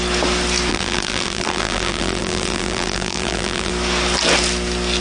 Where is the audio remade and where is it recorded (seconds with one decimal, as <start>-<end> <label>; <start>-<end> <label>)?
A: 0.0-0.7 recorded; 0.7-3.7 remade; 3.7-5.0 recorded